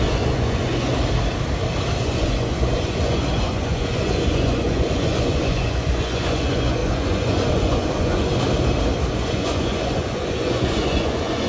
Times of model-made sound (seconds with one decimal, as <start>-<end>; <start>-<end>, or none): 0.0-0.9; 2.0-8.3; 9.1-11.5